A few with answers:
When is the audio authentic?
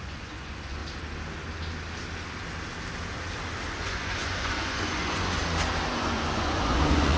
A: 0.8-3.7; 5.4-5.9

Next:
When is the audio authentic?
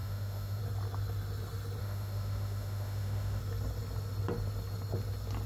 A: 0.6-1.8; 3.4-5.5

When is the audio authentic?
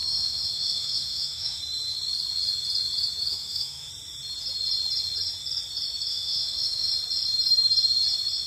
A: 1.6-3.3; 3.9-6.1; 6.9-8.5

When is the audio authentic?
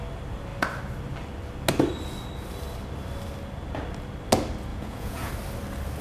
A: 0.0-4.7; 5.3-6.0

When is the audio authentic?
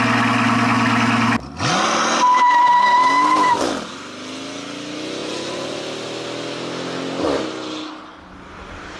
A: 0.0-5.2; 5.8-9.0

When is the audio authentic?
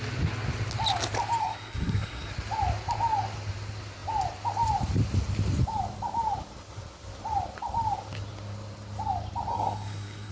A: 0.0-1.4; 2.3-9.5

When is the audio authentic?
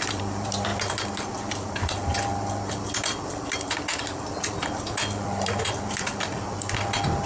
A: 0.0-7.3